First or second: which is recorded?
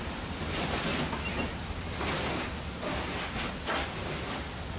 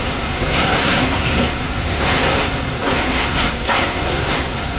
first